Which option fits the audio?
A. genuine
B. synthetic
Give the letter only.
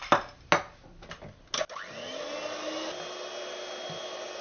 A